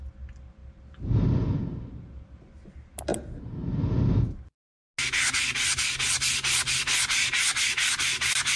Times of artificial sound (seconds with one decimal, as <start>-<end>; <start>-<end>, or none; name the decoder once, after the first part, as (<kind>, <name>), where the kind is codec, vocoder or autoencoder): none